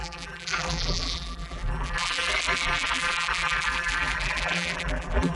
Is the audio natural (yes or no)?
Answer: no